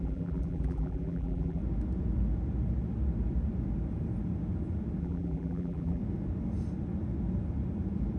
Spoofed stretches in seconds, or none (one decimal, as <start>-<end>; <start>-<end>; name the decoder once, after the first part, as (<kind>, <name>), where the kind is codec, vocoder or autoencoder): 0.0-1.6 (vocoder, BigVGAN v2); 5.0-6.0